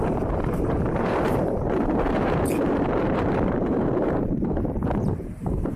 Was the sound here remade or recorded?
remade